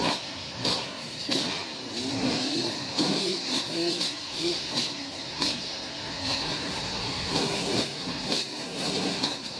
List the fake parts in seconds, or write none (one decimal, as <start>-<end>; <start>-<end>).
0.0-1.4; 2.1-9.6